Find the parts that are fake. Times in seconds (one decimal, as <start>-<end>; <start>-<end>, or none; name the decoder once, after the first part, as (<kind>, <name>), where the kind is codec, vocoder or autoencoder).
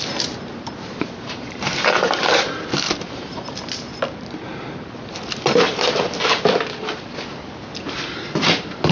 0.5-4.5 (vocoder, BigVGAN v2)